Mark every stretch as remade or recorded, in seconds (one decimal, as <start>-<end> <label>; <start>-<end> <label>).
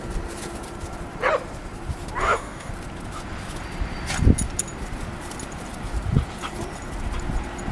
0.0-2.2 recorded; 2.2-2.7 remade; 2.7-7.7 recorded